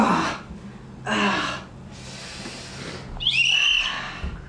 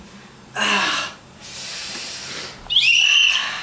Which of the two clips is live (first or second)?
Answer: first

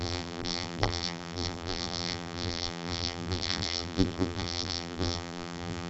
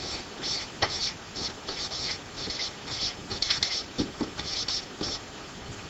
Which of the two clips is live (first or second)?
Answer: second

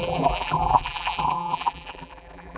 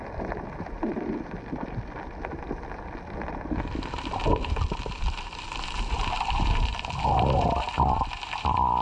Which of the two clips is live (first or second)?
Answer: second